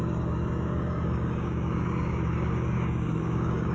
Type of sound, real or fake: fake